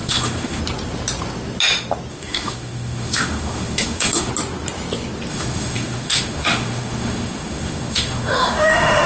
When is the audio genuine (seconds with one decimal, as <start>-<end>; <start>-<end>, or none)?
0.6-2.1; 4.3-5.3